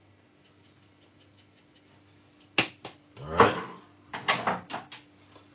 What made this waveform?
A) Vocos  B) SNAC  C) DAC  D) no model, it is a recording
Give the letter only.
D